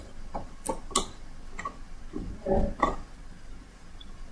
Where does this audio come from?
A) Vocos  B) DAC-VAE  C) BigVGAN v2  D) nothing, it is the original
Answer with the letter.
D